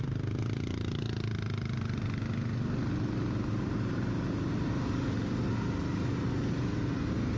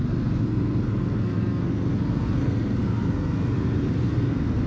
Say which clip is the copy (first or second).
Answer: second